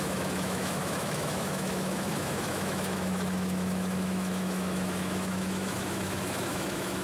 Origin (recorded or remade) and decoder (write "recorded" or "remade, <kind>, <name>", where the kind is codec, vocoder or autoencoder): remade, autoencoder, DAC-VAE